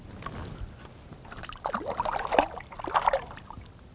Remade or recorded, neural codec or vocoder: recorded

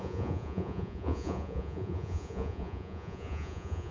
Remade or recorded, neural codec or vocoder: remade, vocoder, Vocos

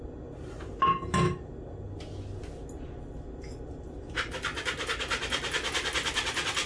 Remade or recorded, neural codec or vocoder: recorded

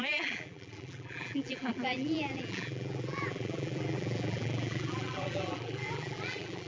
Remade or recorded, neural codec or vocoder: remade, vocoder, BigVGAN v2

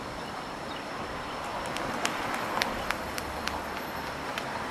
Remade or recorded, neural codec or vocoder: recorded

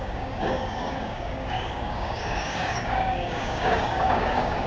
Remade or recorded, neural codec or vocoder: remade, codec, DAC